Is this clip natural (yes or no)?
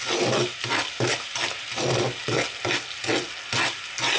yes